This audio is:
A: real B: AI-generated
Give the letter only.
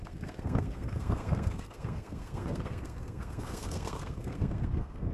B